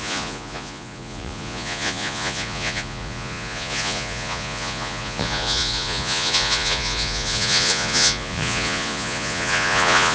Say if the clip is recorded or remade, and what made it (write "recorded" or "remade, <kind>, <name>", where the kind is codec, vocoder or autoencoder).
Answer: remade, vocoder, Vocos